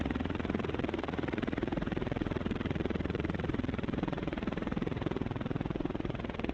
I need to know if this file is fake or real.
fake